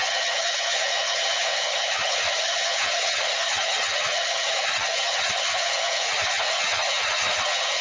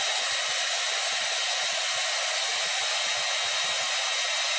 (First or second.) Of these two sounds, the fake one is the first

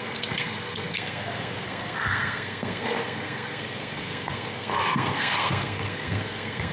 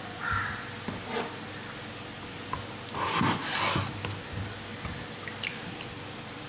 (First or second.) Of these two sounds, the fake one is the first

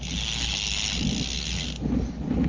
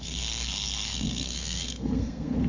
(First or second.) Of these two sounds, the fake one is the second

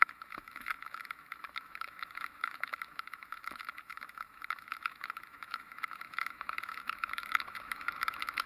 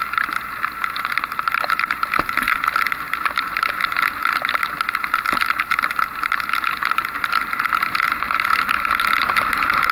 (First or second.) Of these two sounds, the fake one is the first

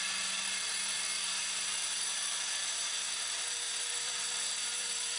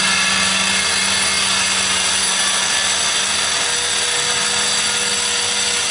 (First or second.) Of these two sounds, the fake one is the first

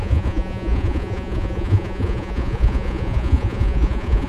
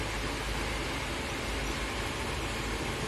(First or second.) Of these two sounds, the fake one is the first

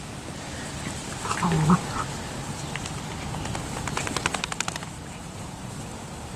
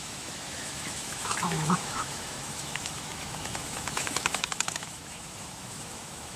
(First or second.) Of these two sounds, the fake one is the second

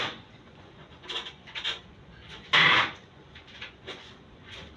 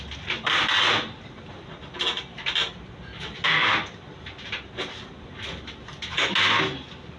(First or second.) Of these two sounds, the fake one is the first